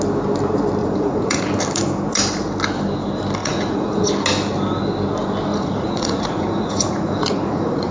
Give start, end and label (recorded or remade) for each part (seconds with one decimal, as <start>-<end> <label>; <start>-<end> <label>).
0.0-0.8 recorded; 0.8-1.5 remade; 1.5-3.4 recorded; 3.4-4.1 remade; 4.1-5.5 recorded; 5.5-7.9 remade